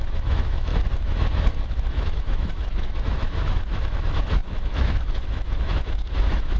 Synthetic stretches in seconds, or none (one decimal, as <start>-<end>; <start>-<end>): 0.0-6.6